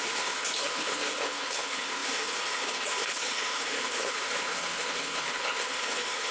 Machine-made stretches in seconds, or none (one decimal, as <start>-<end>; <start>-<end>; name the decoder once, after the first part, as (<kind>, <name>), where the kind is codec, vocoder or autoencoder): 0.0-6.3 (codec, HILCodec)